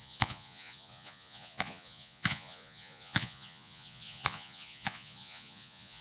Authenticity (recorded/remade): remade